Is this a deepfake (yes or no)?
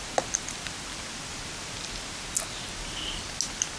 no